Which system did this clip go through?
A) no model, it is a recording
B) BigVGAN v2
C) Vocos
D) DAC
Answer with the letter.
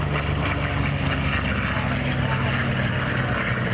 A